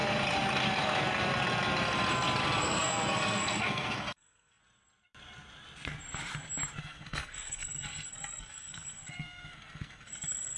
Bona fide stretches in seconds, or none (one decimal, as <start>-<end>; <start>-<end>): 0.0-2.6; 4.6-6.8